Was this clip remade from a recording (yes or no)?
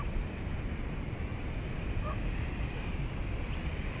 yes